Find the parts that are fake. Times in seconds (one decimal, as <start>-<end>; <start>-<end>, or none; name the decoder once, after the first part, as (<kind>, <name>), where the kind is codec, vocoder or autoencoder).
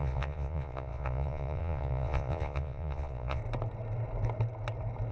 0.0-3.4 (vocoder, Vocos)